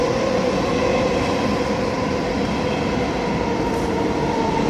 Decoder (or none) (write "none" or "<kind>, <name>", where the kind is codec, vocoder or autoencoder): none